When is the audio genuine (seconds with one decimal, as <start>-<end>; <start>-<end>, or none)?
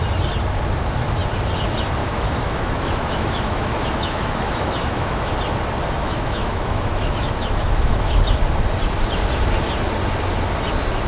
0.0-2.0; 5.3-6.0; 8.2-11.1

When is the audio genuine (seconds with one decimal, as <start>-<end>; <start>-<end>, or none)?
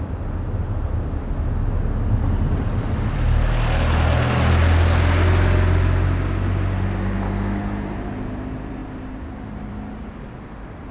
0.0-10.9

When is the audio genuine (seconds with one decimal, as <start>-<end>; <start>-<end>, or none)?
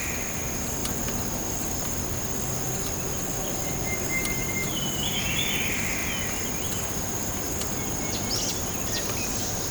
0.0-4.4; 5.4-9.7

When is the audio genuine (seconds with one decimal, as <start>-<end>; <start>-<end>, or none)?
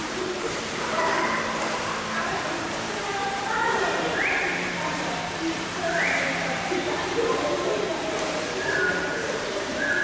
7.9-8.9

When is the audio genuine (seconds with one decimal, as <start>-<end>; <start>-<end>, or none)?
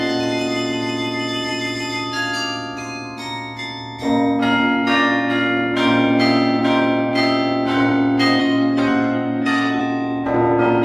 0.0-8.4; 9.8-10.8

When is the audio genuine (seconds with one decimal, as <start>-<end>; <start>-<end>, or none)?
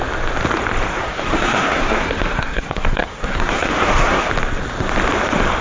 0.0-0.9; 4.3-5.6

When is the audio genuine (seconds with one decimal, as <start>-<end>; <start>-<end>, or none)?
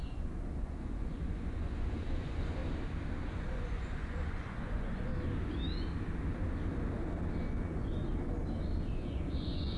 2.6-3.3; 5.1-7.5; 8.0-8.9